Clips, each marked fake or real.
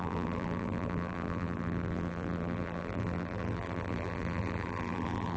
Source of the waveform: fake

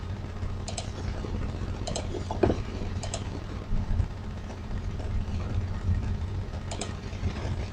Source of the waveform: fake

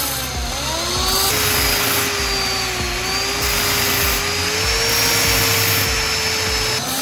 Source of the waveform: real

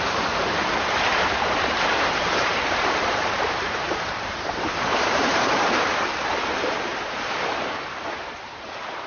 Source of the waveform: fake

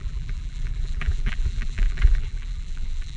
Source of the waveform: fake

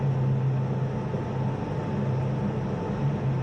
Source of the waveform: real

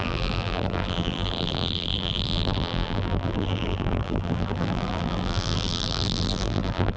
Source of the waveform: fake